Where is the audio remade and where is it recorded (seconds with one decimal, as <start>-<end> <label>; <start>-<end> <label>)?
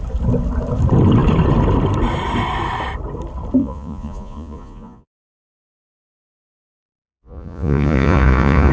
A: 0.0-3.6 recorded; 3.6-8.7 remade